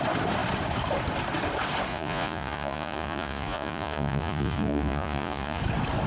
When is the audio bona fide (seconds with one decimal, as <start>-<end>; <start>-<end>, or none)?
0.0-1.9; 5.6-6.1